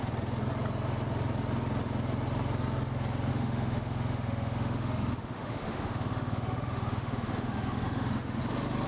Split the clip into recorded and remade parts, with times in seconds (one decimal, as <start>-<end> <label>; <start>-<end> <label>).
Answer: 0.0-3.3 recorded; 3.3-8.4 remade; 8.4-8.9 recorded